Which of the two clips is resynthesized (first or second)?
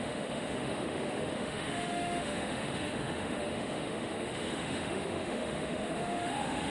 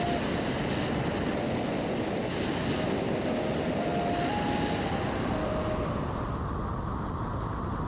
first